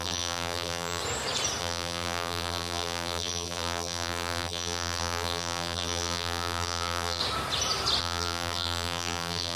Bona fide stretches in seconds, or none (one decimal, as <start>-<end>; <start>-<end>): 1.0-1.6; 7.2-8.0